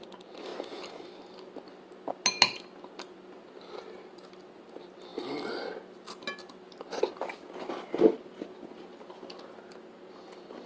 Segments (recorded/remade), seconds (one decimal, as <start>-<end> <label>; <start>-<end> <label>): 0.0-10.7 recorded